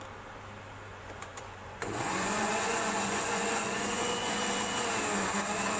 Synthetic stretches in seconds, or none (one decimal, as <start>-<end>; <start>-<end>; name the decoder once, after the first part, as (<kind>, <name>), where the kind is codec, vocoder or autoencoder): 0.9-4.4 (vocoder, Vocos)